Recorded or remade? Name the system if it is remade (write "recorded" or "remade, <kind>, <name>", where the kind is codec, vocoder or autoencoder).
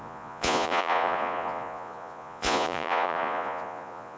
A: remade, vocoder, Vocos